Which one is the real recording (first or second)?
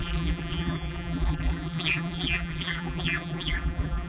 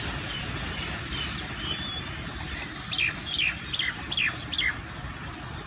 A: second